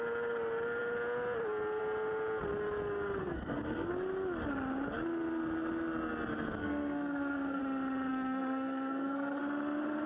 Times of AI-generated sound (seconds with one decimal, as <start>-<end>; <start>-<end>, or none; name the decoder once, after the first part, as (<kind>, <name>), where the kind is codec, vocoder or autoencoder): 3.2-3.9 (codec, SNAC); 6.6-7.6; 8.1-9.4